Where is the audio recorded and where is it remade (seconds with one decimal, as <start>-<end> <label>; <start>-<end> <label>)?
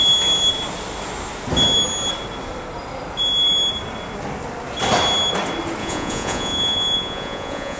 0.0-5.8 recorded; 5.8-7.8 remade